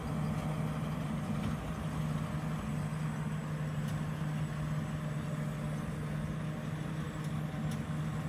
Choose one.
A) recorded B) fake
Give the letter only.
A